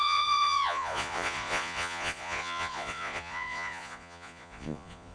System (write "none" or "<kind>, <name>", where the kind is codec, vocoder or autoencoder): vocoder, Vocos